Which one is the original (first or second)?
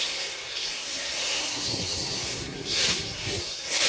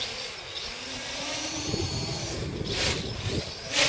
second